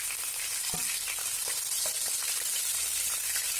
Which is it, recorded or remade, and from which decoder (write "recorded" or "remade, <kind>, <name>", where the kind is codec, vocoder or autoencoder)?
remade, vocoder, BigVGAN v2